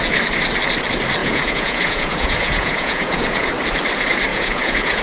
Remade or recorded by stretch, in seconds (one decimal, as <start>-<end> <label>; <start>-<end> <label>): 0.0-1.2 recorded; 1.2-3.5 remade; 3.5-4.3 recorded; 4.3-5.0 remade